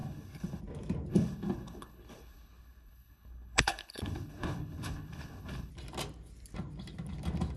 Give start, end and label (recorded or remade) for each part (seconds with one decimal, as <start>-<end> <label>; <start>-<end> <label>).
0.0-0.6 remade; 0.6-1.1 recorded; 1.1-5.7 remade; 5.7-7.6 recorded